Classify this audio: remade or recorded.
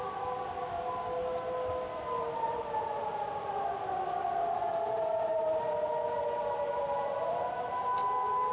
recorded